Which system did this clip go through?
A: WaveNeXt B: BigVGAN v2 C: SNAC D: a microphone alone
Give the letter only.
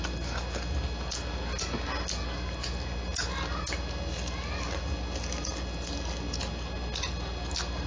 D